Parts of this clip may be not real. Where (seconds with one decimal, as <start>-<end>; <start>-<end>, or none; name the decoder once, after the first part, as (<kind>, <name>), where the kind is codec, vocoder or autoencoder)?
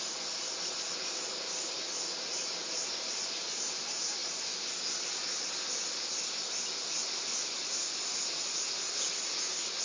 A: none